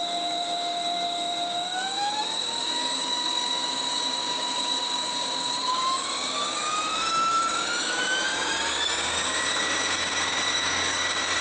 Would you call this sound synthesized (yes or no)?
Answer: yes